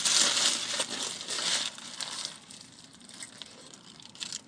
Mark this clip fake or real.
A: real